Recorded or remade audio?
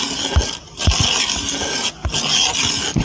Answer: recorded